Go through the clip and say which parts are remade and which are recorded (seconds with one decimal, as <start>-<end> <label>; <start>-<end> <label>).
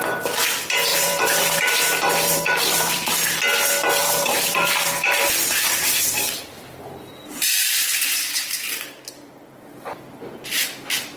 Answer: 0.0-0.9 recorded; 0.9-3.1 remade; 3.1-4.0 recorded; 4.0-8.7 remade; 8.7-11.2 recorded